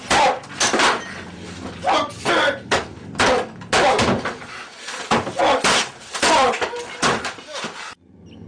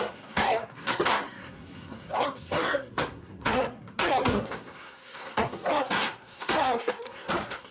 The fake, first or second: second